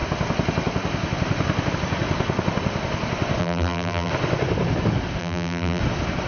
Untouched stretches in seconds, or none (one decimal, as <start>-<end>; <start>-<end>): 0.0-3.4; 4.1-5.2; 5.8-6.3